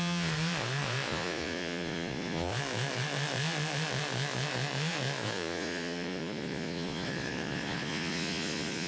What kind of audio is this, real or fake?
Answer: fake